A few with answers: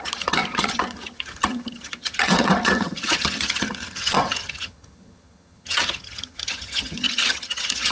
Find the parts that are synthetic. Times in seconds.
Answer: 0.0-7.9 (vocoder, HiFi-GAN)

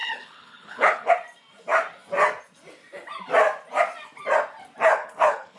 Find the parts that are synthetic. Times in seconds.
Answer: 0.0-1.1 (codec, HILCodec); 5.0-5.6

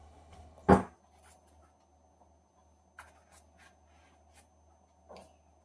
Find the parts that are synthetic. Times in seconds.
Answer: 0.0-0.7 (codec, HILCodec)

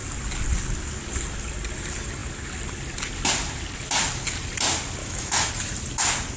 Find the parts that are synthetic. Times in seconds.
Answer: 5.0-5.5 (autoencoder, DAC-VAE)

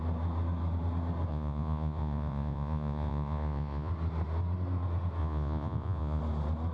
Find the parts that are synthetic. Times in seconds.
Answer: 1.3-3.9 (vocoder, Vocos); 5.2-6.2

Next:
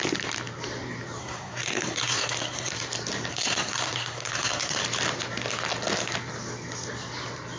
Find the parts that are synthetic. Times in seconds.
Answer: 1.2-2.7 (codec, SNAC); 3.3-4.8